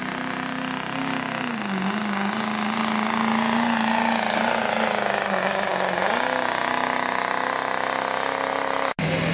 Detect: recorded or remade recorded